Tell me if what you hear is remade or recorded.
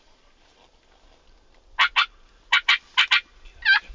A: recorded